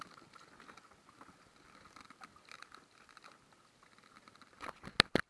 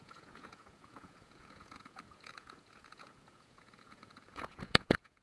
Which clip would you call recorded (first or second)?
first